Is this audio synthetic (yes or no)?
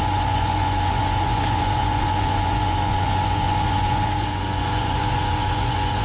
yes